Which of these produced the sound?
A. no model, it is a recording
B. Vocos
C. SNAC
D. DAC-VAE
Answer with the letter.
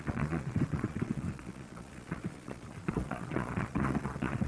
B